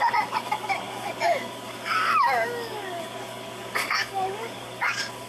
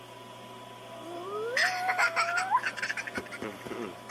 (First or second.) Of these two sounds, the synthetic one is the first